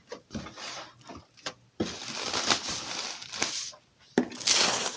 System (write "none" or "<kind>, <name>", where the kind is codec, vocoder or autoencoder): none